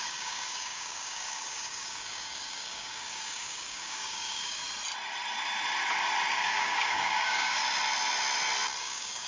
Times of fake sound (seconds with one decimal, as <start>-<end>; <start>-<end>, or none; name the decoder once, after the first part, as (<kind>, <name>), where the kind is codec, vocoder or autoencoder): 0.0-4.6 (codec, DAC); 6.3-7.6; 8.8-9.3